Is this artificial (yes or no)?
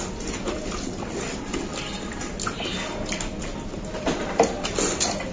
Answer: no